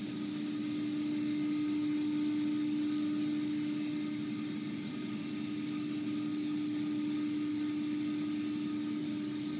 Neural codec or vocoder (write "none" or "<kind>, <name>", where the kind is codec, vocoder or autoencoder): none